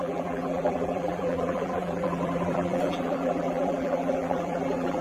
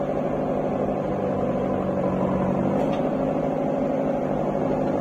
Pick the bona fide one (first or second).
second